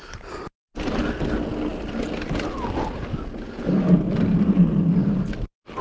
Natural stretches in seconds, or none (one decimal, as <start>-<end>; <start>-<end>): 0.0-5.8